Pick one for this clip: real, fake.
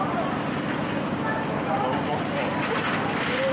real